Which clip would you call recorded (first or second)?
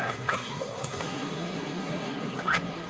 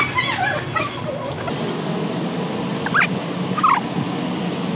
second